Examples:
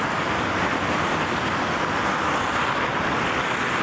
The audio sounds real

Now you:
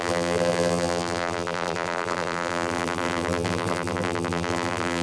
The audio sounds fake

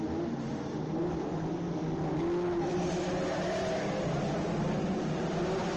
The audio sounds real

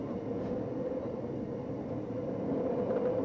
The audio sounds real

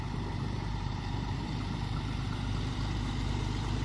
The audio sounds fake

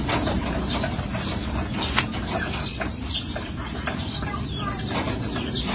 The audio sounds fake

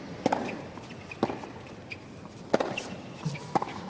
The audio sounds real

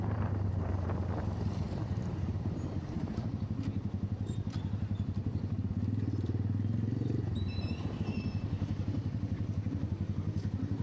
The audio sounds fake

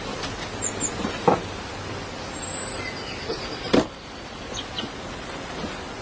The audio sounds real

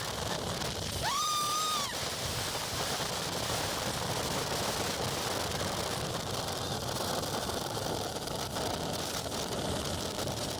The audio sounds fake